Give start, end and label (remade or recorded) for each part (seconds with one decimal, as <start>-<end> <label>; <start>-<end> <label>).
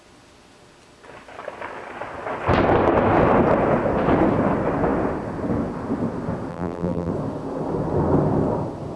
0.0-6.5 recorded; 6.5-7.1 remade; 7.1-9.0 recorded